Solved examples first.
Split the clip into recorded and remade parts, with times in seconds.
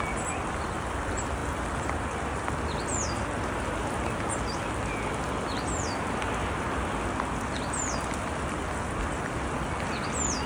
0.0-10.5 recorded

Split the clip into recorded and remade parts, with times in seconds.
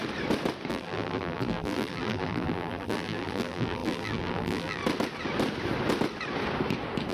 0.0-0.7 recorded; 0.7-4.8 remade; 4.8-7.1 recorded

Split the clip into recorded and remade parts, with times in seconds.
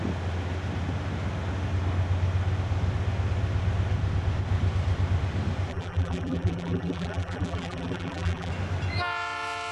0.0-5.7 recorded; 5.7-8.5 remade; 8.5-9.7 recorded